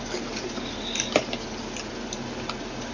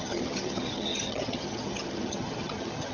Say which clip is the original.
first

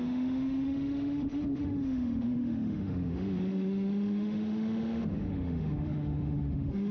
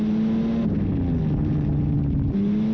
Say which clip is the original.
second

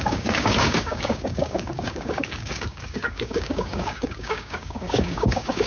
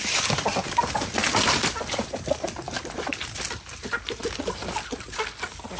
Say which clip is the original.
second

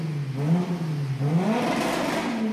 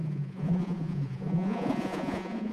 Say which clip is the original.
first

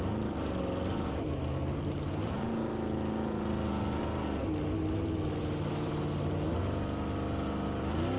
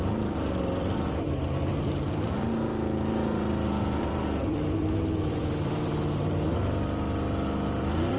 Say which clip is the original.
first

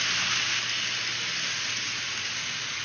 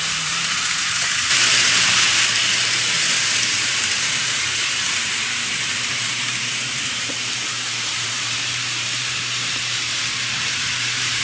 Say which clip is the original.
first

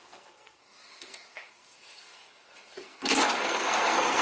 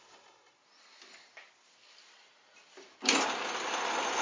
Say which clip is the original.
second